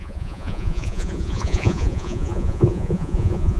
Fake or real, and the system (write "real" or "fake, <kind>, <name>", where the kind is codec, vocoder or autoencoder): fake, vocoder, Vocos